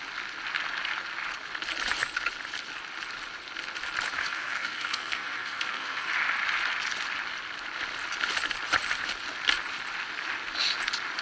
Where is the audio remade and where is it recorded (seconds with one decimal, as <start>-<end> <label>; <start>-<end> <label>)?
0.0-4.2 recorded; 4.2-6.1 remade; 6.1-11.2 recorded